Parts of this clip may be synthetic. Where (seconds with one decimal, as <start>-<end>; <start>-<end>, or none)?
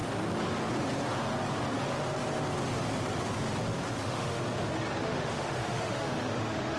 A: 4.0-4.4; 5.0-6.8